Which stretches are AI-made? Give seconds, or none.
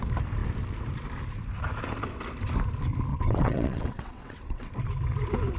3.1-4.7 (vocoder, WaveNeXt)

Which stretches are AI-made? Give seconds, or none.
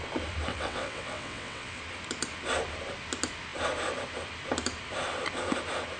0.5-1.8 (vocoder, WaveNeXt)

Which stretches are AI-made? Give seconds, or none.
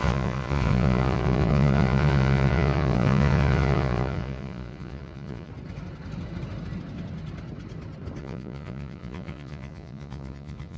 0.0-5.5 (vocoder, Vocos); 8.2-10.8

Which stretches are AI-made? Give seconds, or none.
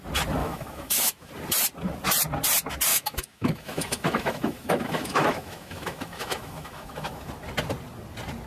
0.4-1.3 (autoencoder, DAC-VAE); 2.9-7.3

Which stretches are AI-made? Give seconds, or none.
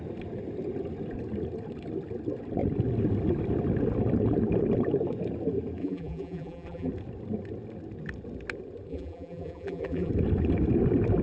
5.8-6.9 (vocoder, BigVGAN v2); 8.9-10.1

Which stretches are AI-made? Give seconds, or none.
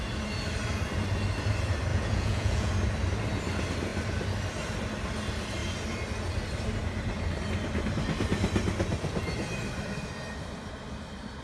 1.9-2.7 (vocoder, Vocos)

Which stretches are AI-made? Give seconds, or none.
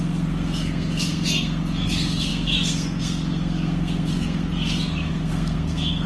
0.0-6.1 (codec, SNAC)